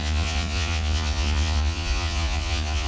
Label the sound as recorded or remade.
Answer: remade